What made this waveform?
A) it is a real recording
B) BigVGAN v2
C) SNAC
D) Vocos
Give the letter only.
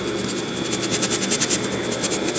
A